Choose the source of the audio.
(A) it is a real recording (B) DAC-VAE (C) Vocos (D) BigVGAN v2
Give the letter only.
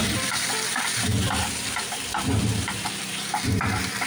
D